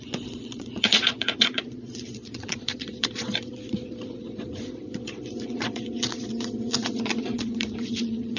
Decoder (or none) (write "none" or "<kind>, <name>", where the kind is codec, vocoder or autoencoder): vocoder, Vocos